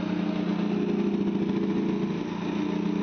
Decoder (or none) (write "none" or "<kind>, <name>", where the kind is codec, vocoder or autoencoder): none